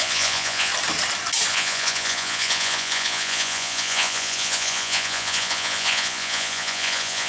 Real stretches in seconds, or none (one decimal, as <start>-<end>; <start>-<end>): 0.7-1.5